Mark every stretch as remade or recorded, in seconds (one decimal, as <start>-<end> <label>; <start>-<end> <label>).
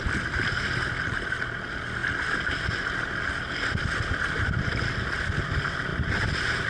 0.0-6.7 recorded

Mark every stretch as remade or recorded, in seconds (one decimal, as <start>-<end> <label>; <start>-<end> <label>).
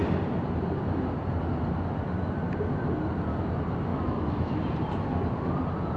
0.0-3.9 recorded; 3.9-4.5 remade; 4.5-6.0 recorded